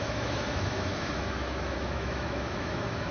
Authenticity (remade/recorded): remade